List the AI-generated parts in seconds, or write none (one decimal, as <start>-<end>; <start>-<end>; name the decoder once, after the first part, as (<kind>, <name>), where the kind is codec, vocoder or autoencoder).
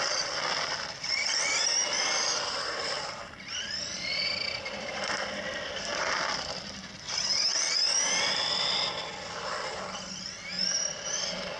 0.0-7.5 (vocoder, BigVGAN v2); 9.2-11.6